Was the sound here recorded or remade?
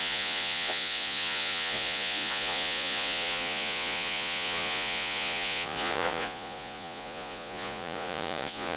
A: remade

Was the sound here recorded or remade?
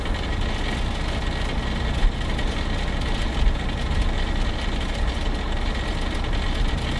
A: recorded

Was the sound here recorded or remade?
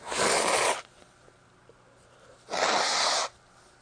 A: recorded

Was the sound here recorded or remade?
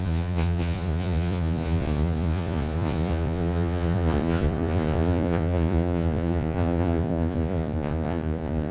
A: remade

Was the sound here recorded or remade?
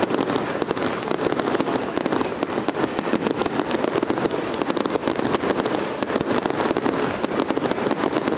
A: recorded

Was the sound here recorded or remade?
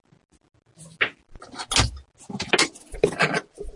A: recorded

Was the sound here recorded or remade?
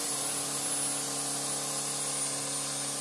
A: recorded